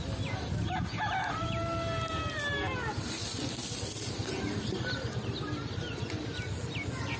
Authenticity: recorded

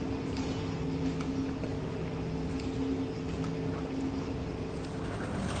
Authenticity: recorded